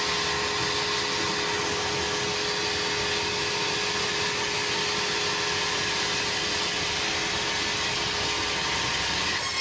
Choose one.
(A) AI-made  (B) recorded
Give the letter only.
B